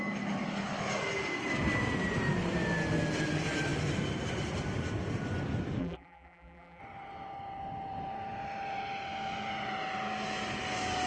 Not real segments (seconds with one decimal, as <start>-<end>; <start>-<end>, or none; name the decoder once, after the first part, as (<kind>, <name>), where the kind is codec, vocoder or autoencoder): 5.8-6.8 (vocoder, BigVGAN v2)